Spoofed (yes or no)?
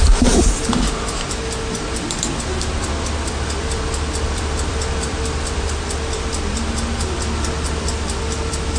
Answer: yes